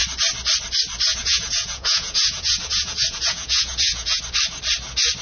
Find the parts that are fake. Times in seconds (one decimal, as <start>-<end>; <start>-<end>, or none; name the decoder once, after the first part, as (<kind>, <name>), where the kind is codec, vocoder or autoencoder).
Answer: 1.1-4.2 (vocoder, Vocos)

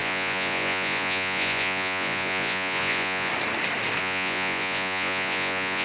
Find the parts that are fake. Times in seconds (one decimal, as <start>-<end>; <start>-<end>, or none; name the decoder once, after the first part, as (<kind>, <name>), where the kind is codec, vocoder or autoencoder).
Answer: 0.0-3.3 (vocoder, Vocos); 4.0-5.8

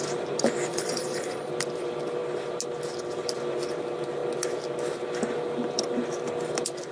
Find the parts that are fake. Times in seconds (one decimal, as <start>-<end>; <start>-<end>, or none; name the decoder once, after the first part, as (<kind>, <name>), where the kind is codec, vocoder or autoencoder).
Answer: 0.7-1.5 (vocoder, Vocos)

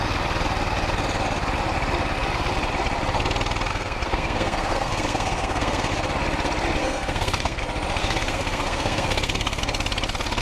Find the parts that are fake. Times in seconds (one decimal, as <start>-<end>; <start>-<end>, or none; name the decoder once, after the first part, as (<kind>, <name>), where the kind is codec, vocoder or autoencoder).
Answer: 3.7-5.9 (codec, SNAC); 6.8-7.6; 8.0-9.6